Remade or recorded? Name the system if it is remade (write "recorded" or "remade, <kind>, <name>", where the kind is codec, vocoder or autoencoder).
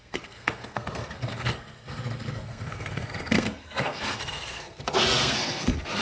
remade, codec, SNAC